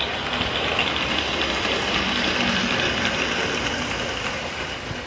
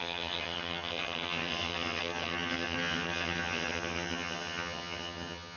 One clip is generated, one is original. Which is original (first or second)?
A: first